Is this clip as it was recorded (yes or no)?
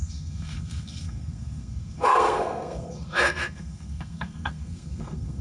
no